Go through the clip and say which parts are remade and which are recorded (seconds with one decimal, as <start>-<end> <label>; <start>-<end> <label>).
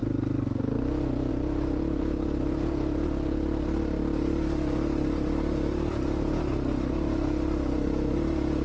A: 0.0-8.6 recorded